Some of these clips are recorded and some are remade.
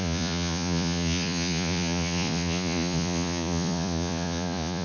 remade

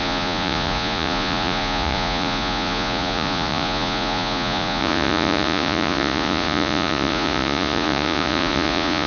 remade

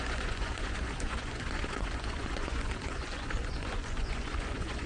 remade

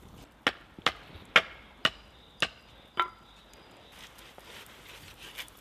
recorded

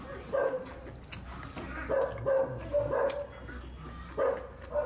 recorded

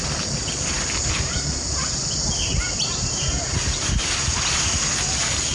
recorded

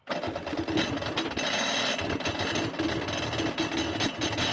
recorded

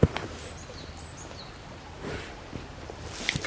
recorded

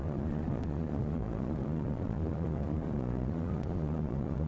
remade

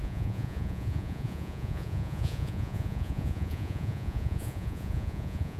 remade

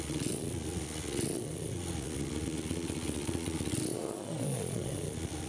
remade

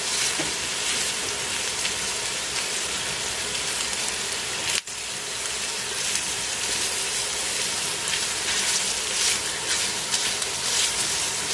recorded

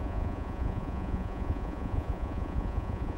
remade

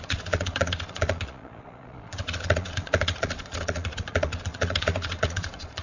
remade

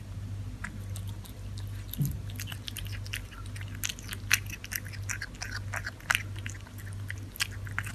recorded